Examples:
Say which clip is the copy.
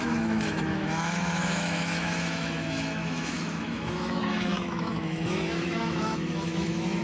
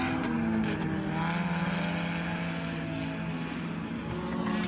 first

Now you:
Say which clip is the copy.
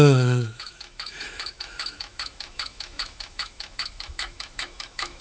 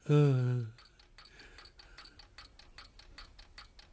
first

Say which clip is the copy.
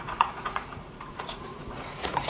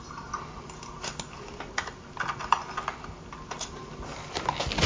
first